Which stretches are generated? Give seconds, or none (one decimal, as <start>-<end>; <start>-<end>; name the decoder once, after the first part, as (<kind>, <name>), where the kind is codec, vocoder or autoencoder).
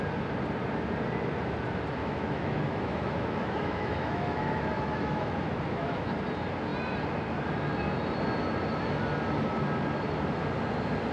2.0-6.1 (autoencoder, DAC-VAE)